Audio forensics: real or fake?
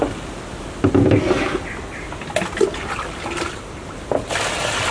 real